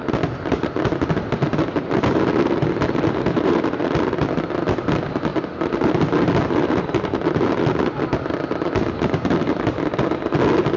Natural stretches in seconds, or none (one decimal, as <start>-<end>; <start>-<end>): 0.0-10.8